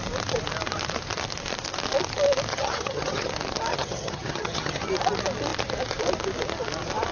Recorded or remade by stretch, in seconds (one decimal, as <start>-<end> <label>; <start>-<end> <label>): 0.0-2.5 recorded; 2.5-3.3 remade; 3.3-3.7 recorded; 3.7-4.9 remade; 4.9-7.1 recorded